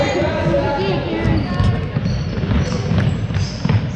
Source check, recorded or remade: recorded